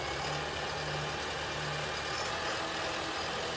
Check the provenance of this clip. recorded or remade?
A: recorded